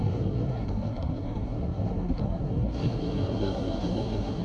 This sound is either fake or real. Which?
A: fake